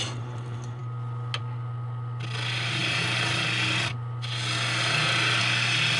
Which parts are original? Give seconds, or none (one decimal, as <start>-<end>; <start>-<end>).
0.0-6.0